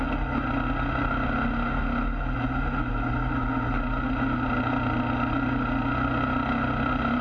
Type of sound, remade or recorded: recorded